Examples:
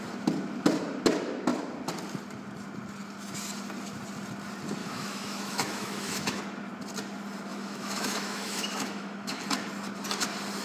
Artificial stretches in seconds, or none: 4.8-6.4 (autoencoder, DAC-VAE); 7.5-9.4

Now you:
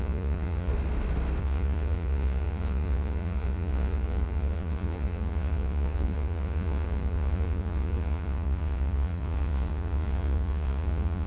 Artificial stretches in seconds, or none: 0.0-0.7 (vocoder, Vocos); 1.4-11.3